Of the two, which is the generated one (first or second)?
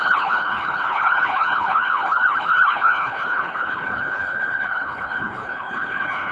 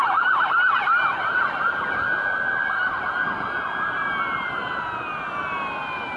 first